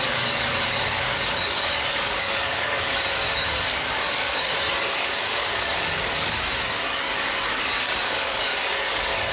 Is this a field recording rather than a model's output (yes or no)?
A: no